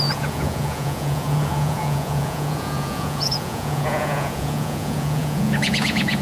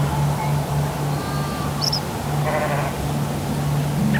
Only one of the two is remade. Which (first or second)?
first